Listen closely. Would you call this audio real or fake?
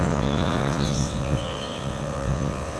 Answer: fake